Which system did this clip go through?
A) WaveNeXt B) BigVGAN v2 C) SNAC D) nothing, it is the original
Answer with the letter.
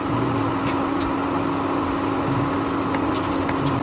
D